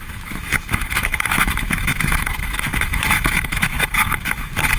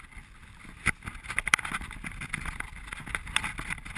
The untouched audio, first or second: second